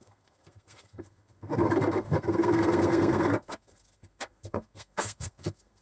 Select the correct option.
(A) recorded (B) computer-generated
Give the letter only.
B